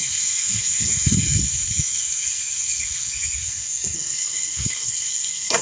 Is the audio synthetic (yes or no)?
yes